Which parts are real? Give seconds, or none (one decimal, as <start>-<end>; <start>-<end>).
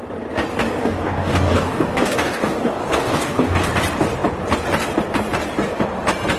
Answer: 0.0-0.8; 3.7-6.4